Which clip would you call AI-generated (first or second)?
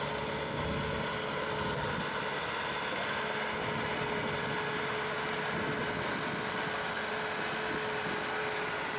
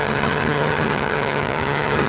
second